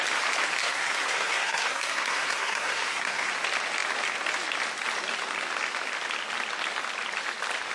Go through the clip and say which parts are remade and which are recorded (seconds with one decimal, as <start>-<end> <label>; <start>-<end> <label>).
0.0-0.6 recorded; 0.6-3.3 remade; 3.3-7.7 recorded